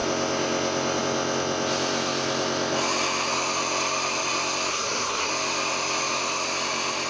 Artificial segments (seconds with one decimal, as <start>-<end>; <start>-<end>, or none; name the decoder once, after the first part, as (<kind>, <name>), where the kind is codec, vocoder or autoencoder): 4.7-5.3 (codec, SNAC)